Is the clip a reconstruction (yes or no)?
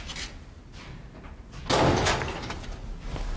no